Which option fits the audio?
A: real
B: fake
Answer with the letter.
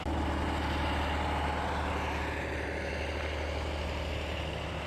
A